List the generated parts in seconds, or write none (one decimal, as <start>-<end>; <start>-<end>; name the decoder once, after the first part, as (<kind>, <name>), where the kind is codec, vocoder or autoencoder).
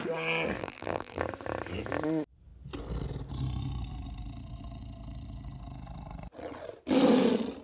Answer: 0.6-1.2 (vocoder, BigVGAN v2)